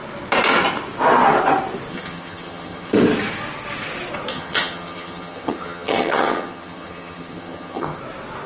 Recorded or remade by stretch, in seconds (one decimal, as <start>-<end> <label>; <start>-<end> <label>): 0.0-1.9 recorded; 1.9-2.9 remade; 2.9-4.3 recorded; 4.3-8.0 remade; 8.0-8.5 recorded